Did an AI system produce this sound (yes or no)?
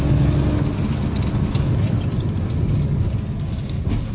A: no